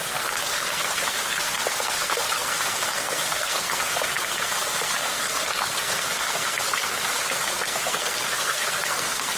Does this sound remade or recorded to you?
remade